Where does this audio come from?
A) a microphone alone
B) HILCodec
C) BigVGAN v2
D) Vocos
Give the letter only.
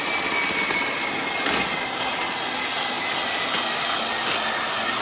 A